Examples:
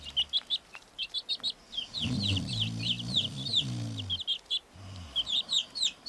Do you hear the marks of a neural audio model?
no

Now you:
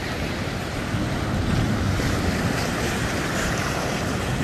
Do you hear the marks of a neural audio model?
yes